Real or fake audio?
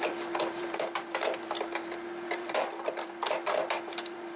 fake